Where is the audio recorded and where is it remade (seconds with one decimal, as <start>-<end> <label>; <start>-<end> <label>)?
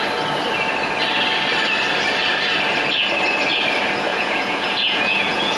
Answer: 0.0-4.1 recorded; 4.1-5.6 remade